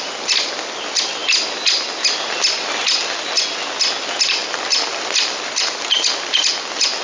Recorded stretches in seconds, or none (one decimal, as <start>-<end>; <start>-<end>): 0.0-7.0